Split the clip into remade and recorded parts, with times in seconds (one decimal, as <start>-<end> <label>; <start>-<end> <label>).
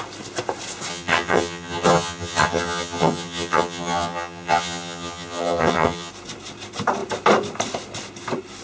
0.0-0.9 recorded; 0.9-6.1 remade; 6.1-8.6 recorded